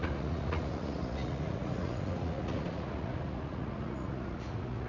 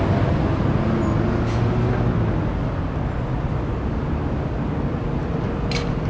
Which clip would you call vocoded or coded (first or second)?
first